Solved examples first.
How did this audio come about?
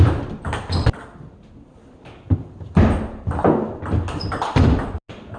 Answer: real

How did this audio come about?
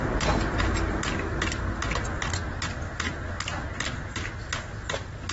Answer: real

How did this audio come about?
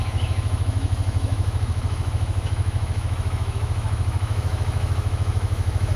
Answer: fake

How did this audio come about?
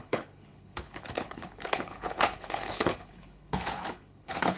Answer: fake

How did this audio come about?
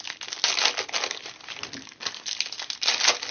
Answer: real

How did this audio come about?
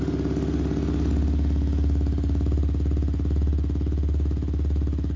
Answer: real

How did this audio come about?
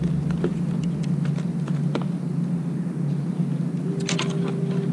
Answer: real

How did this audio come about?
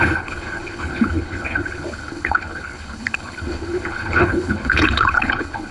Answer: fake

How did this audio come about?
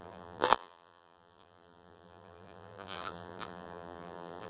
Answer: fake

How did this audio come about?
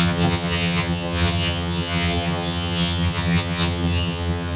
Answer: fake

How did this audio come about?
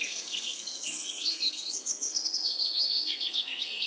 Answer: fake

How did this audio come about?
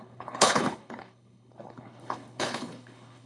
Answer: fake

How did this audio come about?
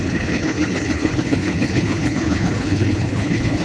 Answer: fake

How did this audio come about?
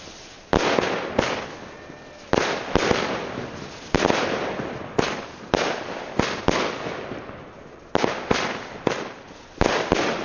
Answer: real